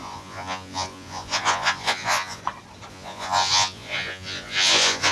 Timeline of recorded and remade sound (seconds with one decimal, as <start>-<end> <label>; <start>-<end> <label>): 0.0-2.4 remade; 2.4-2.9 recorded; 2.9-5.1 remade